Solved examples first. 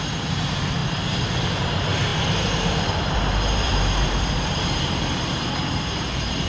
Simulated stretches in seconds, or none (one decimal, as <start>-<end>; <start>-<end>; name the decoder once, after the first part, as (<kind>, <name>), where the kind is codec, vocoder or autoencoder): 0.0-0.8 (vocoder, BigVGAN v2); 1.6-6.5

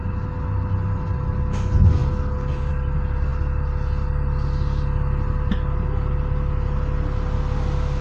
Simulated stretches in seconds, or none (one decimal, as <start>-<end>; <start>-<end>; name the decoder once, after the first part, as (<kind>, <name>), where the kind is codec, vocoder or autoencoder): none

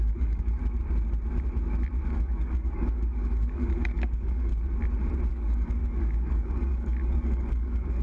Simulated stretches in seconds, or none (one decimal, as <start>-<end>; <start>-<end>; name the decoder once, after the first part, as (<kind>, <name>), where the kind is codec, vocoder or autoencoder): 0.0-0.6 (codec, DAC); 2.1-4.5; 5.3-8.0

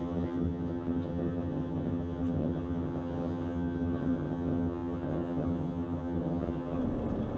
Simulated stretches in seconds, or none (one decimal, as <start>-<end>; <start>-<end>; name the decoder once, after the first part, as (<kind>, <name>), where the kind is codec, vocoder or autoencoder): 0.0-6.8 (vocoder, HiFi-GAN)

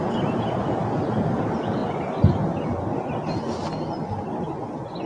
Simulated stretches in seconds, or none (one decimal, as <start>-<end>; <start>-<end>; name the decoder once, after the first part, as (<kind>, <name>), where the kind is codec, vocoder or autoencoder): none

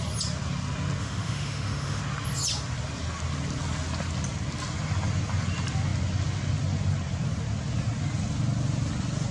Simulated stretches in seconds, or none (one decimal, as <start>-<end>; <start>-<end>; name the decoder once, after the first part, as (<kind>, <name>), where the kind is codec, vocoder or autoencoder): 1.0-2.0 (autoencoder, DAC-VAE)

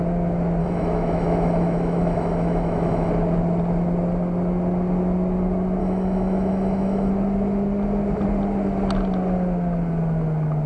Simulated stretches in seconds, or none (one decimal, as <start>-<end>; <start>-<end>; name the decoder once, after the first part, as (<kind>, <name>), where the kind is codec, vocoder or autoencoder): 0.6-3.1 (autoencoder, DAC-VAE); 5.8-7.1

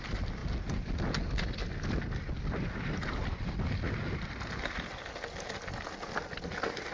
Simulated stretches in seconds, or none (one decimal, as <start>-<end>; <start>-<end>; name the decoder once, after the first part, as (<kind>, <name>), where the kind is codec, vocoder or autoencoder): none